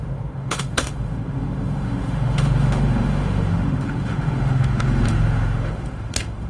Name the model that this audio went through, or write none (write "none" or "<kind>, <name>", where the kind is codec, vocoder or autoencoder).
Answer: autoencoder, DAC-VAE